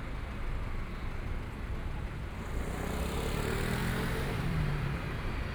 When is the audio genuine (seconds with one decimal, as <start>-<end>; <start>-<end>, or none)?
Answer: 0.0-3.8; 4.7-5.5